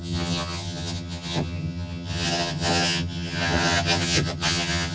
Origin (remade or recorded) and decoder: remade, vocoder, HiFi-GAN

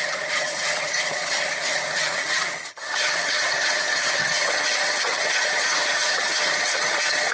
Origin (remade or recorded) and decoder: remade, vocoder, HiFi-GAN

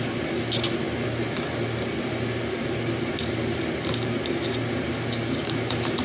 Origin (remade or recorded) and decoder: recorded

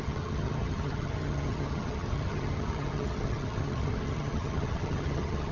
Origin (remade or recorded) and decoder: remade, vocoder, HiFi-GAN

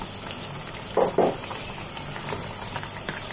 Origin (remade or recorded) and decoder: recorded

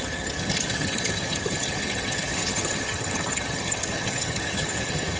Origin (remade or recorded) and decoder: remade, vocoder, HiFi-GAN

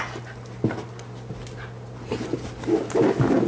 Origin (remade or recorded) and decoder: recorded